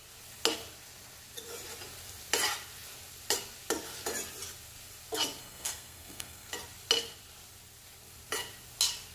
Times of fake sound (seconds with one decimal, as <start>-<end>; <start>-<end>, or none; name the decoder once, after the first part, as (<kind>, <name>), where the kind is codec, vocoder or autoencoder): 5.4-6.5 (codec, SNAC)